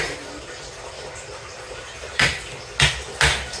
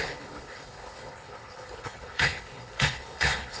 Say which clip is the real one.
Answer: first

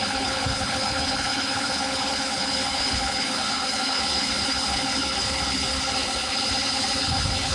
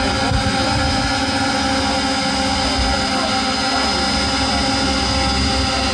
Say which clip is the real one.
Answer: second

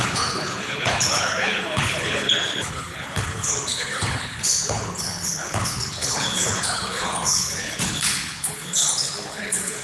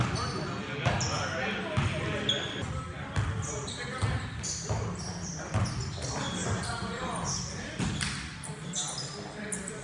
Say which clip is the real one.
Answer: second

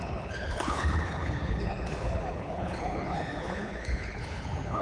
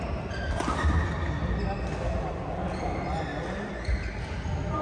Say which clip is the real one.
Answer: second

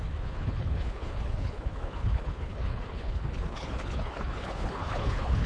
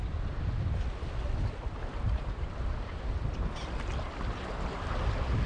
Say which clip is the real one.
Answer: second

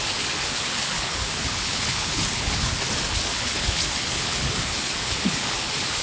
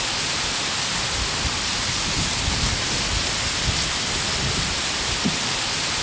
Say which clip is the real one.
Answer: second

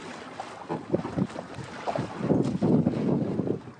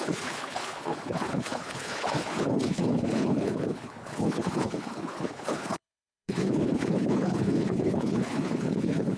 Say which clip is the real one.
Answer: first